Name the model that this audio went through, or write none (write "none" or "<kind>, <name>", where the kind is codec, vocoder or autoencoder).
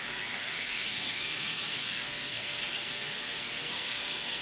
codec, SNAC